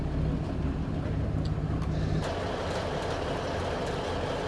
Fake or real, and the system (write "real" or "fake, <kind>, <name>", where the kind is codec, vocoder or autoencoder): real